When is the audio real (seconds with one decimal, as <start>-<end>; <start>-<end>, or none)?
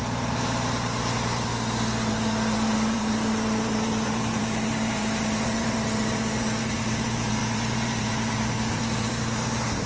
1.5-2.1